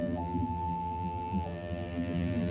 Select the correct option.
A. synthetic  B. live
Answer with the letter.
A